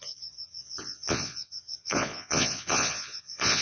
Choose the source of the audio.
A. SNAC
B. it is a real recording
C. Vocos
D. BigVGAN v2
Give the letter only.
C